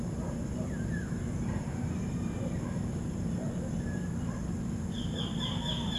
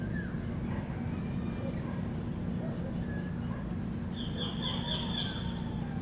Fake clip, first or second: first